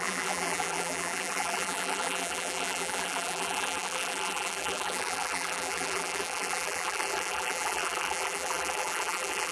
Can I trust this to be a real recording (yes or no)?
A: no